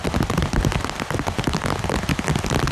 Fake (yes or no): no